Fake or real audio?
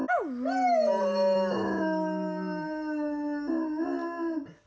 real